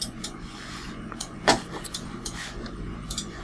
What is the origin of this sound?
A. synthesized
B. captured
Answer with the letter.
A